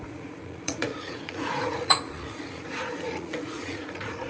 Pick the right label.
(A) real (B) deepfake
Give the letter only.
B